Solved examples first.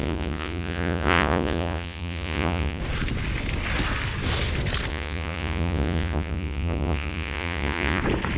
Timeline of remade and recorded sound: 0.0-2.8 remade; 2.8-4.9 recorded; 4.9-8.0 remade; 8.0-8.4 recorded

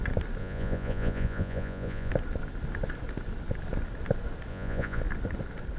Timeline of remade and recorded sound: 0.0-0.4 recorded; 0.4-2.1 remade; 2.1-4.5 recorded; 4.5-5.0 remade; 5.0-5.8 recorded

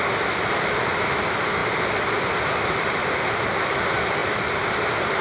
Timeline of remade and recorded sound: 0.0-5.2 recorded

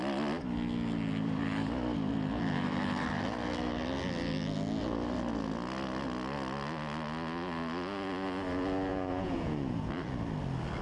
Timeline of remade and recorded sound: 0.0-8.9 recorded; 8.9-9.9 remade; 9.9-10.8 recorded

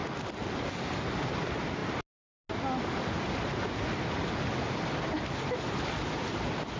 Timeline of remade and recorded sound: 0.0-6.8 recorded

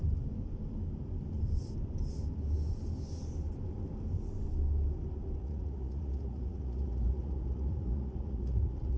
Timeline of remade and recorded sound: 0.0-5.4 recorded; 5.4-9.0 remade

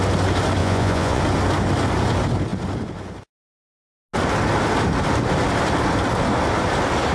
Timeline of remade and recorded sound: 0.0-0.6 recorded; 0.6-1.2 remade; 1.2-7.1 recorded